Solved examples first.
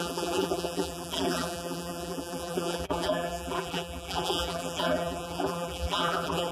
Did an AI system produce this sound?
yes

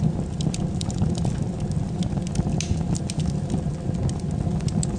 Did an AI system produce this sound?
no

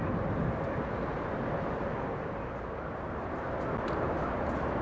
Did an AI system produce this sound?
no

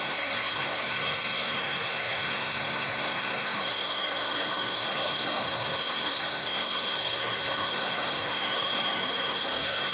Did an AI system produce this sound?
yes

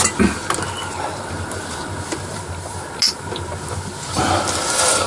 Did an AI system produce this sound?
no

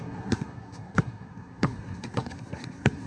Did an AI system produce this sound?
yes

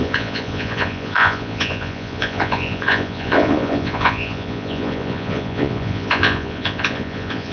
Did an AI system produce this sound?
yes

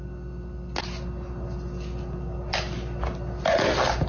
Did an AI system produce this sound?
no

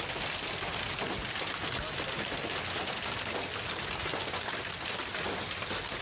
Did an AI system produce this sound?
no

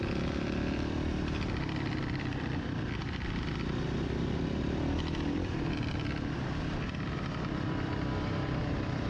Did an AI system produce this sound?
yes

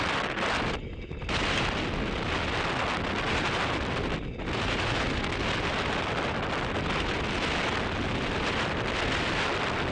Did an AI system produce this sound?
no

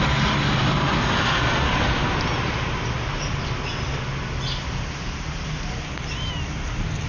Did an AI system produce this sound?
no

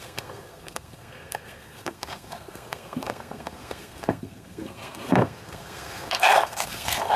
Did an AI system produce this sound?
yes